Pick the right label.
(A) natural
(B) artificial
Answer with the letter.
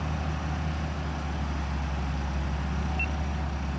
A